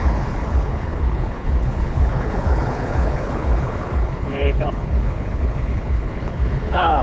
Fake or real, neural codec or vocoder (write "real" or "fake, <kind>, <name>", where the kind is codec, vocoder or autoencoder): fake, codec, HILCodec